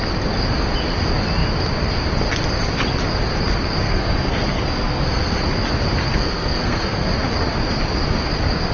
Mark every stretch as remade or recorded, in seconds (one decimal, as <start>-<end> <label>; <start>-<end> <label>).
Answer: 0.0-3.8 recorded; 3.8-5.4 remade; 5.4-6.0 recorded; 6.0-7.1 remade; 7.1-8.7 recorded